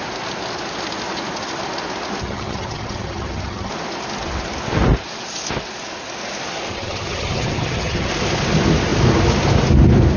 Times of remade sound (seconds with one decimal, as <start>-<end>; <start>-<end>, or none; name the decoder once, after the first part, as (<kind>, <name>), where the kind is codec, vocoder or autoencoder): 2.2-3.7 (vocoder, HiFi-GAN); 6.7-8.1